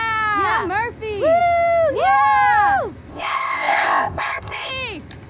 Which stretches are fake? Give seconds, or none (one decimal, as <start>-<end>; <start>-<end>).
3.1-4.7